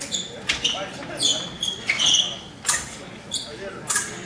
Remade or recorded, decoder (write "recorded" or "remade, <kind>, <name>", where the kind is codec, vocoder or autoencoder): recorded